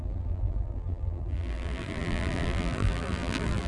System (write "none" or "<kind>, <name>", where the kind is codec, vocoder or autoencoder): vocoder, BigVGAN v2